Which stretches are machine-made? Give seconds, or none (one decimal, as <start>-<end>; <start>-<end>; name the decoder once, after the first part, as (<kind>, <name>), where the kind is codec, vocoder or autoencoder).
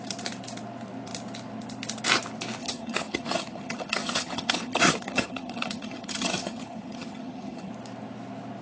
2.6-7.7 (vocoder, HiFi-GAN)